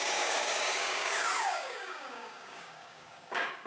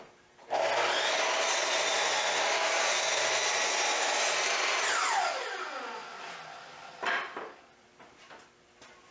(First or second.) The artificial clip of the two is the first